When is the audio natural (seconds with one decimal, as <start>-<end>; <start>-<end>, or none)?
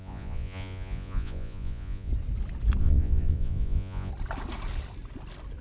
2.1-2.8; 4.1-5.6